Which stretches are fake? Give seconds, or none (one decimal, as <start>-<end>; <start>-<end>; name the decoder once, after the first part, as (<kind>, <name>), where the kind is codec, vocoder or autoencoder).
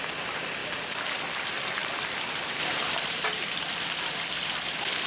0.6-1.2 (vocoder, BigVGAN v2); 1.8-3.3